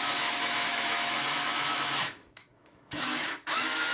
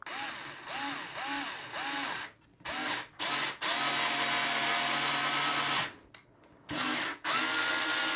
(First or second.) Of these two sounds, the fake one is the first